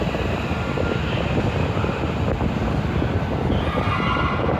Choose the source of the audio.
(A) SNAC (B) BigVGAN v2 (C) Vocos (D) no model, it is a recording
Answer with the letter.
D